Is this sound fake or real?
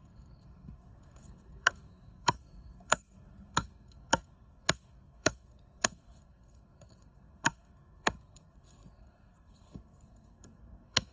fake